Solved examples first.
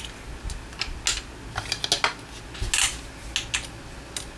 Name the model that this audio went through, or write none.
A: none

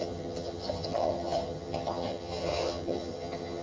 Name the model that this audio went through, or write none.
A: vocoder, HiFi-GAN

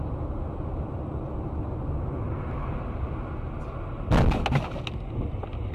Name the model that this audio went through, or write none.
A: none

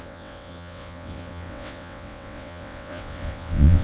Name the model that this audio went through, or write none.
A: vocoder, WaveNeXt